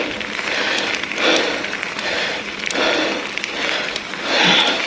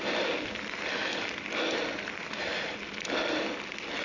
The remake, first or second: first